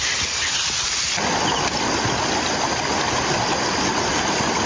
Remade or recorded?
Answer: recorded